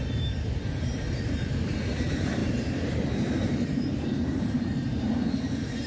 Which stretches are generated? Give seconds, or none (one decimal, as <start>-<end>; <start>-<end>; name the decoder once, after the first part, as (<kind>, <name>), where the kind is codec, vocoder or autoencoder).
0.0-5.9 (vocoder, BigVGAN v2)